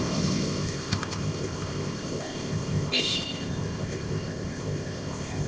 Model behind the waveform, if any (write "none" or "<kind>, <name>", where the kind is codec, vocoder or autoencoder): codec, ZipCodec